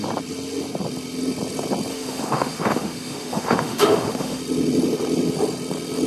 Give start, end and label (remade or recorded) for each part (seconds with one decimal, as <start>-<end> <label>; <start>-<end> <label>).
0.0-1.9 recorded; 1.9-4.4 remade; 4.4-6.1 recorded